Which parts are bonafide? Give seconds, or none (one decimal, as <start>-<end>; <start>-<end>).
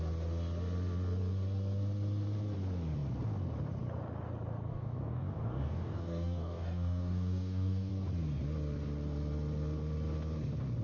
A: 0.0-4.7; 7.9-10.8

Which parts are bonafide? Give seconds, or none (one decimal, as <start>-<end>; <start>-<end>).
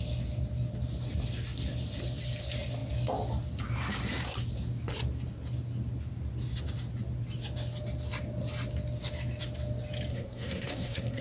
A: 0.0-10.1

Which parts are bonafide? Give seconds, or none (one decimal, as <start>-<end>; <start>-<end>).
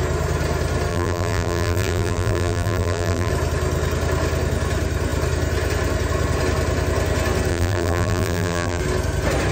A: 0.0-0.9; 3.3-7.5; 8.8-9.5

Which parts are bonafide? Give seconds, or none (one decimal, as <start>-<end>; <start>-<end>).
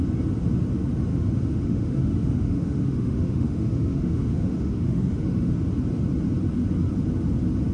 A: 0.0-1.1; 5.5-7.7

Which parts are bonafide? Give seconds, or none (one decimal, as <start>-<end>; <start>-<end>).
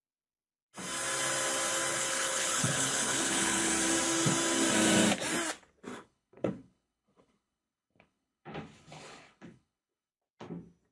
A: 0.0-1.9; 3.7-5.9; 10.1-10.9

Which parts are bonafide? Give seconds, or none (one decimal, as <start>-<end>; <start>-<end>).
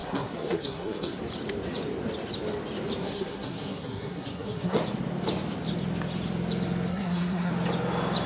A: 1.2-3.0; 4.8-6.9; 7.5-8.3